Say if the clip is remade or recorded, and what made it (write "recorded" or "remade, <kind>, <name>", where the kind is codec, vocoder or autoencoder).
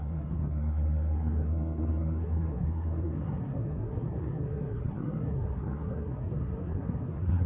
remade, codec, SNAC